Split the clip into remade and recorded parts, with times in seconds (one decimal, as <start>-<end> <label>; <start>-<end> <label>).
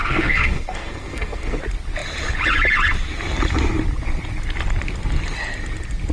0.0-1.6 remade; 1.6-6.1 recorded